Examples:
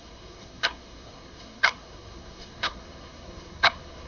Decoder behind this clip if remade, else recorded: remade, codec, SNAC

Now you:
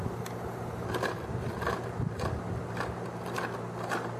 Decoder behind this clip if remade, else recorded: recorded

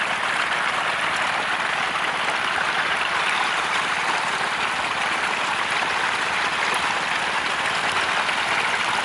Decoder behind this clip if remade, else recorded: recorded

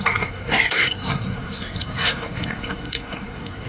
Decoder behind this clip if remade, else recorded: remade, codec, SNAC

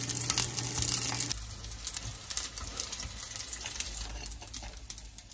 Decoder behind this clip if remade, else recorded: recorded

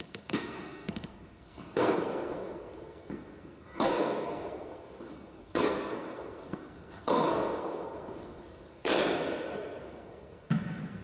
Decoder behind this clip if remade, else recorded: remade, codec, SNAC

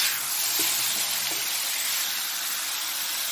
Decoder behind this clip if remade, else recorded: recorded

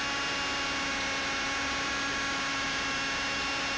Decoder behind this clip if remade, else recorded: recorded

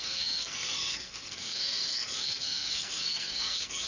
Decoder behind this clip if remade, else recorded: remade, codec, SNAC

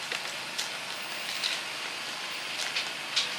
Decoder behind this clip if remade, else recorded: recorded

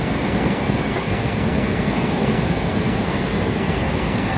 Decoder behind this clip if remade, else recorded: remade, codec, SNAC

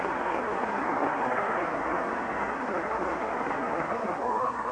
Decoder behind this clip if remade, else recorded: remade, codec, SNAC